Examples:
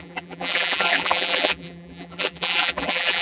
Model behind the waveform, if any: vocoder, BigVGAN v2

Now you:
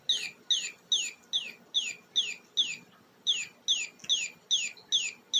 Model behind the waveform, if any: none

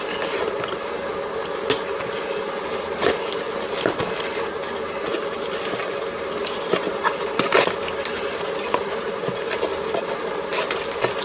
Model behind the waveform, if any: none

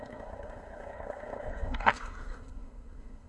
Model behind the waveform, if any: codec, SNAC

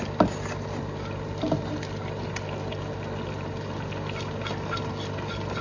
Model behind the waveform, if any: none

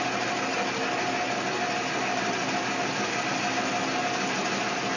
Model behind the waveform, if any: none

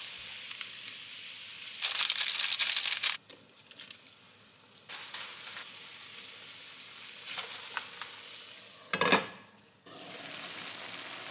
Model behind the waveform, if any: none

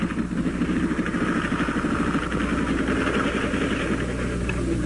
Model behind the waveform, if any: none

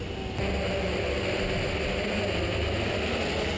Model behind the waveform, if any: none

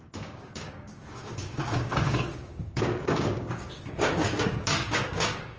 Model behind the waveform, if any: codec, DAC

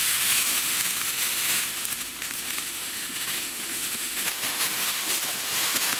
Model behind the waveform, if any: autoencoder, DAC-VAE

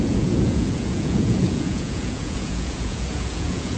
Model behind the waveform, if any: vocoder, Vocos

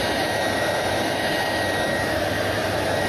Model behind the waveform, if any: vocoder, BigVGAN v2